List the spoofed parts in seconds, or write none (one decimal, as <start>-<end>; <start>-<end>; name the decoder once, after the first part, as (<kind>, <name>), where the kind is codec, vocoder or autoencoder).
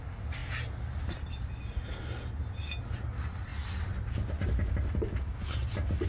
none